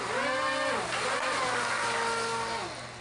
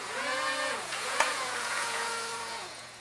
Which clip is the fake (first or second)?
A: second